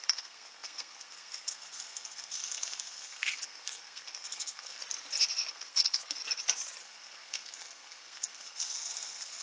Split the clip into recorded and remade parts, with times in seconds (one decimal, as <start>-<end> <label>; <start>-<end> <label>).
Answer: 0.0-4.8 remade; 4.8-5.5 recorded; 5.5-6.2 remade; 6.2-6.8 recorded; 6.8-9.4 remade